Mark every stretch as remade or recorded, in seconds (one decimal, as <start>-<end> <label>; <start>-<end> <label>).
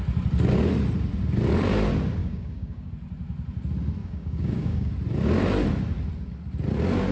0.0-2.2 recorded; 2.2-2.9 remade; 2.9-4.0 recorded; 4.0-4.9 remade; 4.9-7.1 recorded